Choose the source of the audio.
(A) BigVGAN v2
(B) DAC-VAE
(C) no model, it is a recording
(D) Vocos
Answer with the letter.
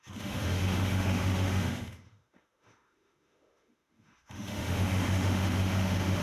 B